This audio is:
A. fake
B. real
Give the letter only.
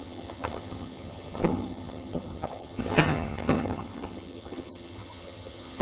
A